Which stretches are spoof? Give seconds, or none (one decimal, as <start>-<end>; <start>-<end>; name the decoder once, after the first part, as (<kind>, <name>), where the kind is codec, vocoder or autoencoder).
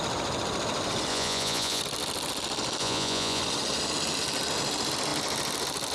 1.1-1.8 (vocoder, Vocos); 2.8-3.4